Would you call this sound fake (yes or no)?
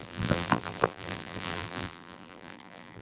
yes